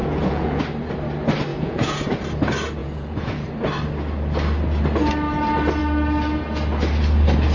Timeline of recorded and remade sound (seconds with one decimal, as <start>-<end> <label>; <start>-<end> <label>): 0.0-0.6 remade; 0.6-1.5 recorded; 1.5-2.1 remade; 2.1-2.8 recorded; 2.8-3.5 remade; 3.5-7.5 recorded